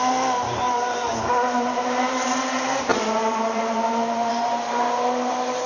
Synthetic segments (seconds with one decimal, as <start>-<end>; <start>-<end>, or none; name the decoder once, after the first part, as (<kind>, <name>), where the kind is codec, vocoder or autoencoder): 0.0-5.7 (vocoder, BigVGAN v2)